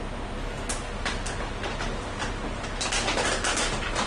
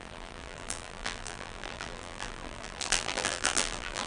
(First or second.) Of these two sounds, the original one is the first